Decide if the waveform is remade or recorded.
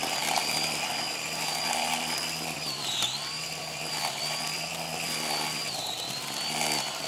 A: recorded